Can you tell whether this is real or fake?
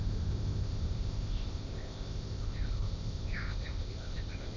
fake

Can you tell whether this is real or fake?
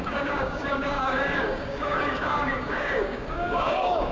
fake